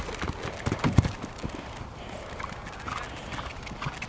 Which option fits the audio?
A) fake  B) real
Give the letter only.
B